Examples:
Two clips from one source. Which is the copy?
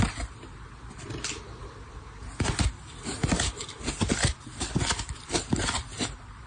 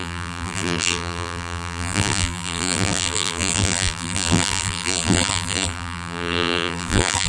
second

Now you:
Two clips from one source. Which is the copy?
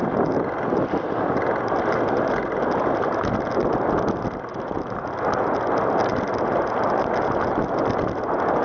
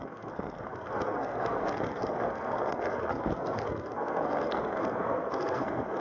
second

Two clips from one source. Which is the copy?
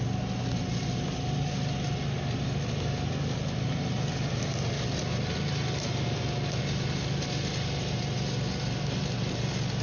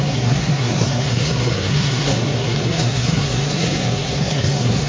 second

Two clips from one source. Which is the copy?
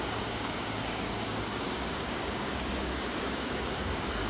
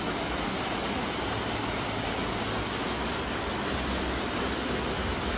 first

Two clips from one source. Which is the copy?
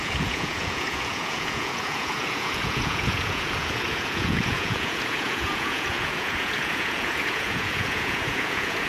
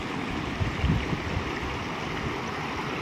first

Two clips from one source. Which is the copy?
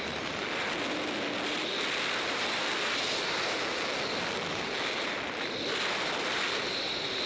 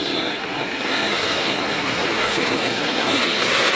second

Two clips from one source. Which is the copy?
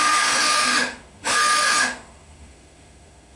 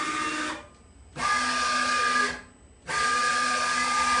first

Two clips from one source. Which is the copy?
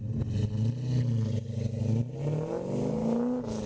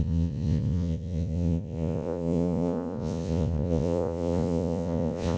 second